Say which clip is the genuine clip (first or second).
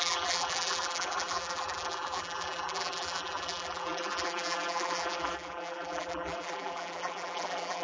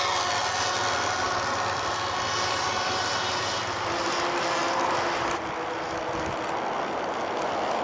second